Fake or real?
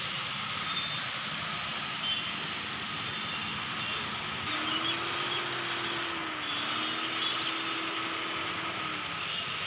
real